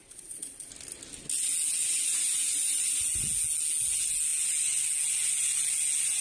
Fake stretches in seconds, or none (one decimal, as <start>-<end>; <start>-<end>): 0.0-0.7